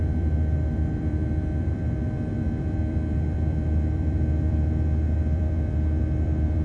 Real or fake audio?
fake